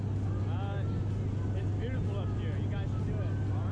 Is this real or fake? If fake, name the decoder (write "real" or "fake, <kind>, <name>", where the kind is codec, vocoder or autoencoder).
real